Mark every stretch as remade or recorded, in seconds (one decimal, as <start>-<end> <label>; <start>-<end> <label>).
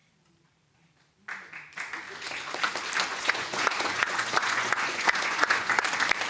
0.0-3.1 recorded; 3.1-5.8 remade; 5.8-6.3 recorded